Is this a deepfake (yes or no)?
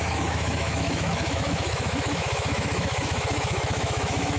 yes